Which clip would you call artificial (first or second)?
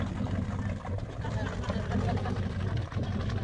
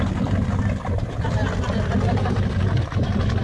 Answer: second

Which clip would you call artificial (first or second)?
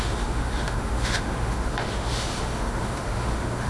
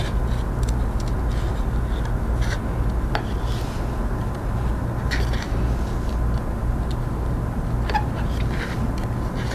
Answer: first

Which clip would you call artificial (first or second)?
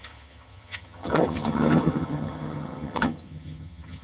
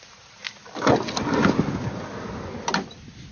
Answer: first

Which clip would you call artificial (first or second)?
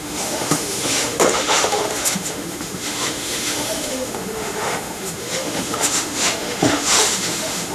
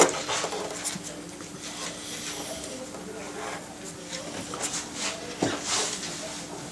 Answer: first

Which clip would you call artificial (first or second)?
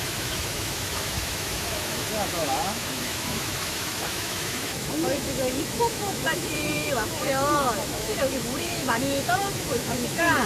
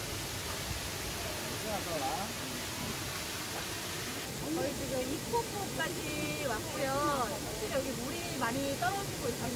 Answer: first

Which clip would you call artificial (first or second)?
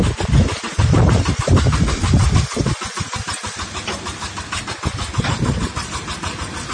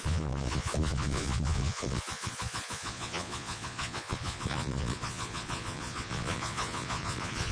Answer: second